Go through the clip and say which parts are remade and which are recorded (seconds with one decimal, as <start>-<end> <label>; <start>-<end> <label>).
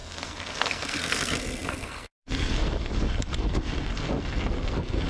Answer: 0.0-5.1 remade